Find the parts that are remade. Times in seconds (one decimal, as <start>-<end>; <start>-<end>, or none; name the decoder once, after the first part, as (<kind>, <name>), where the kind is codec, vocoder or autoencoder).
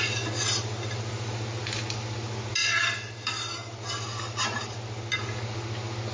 none